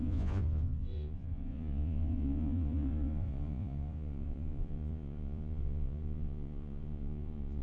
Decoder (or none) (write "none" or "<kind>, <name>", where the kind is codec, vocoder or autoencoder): vocoder, Vocos